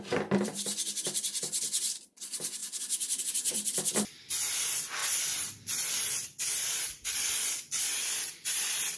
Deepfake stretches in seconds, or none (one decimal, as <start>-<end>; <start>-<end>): 0.0-2.6; 3.2-5.0; 5.9-9.0